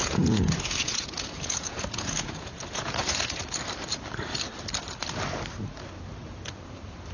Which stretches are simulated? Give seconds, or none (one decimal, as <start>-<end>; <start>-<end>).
0.0-3.4